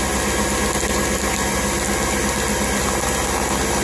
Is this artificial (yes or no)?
no